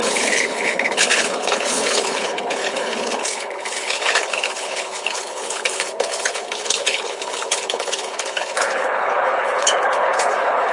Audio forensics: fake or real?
fake